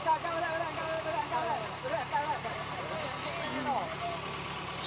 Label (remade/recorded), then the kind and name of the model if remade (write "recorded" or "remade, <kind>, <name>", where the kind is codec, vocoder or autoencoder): recorded